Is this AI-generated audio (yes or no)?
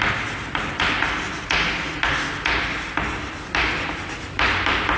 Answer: no